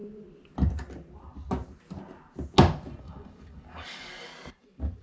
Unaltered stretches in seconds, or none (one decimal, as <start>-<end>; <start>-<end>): 0.0-3.0; 4.3-5.0